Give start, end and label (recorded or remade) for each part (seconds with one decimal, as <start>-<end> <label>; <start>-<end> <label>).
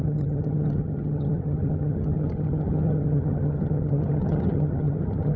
0.0-5.4 remade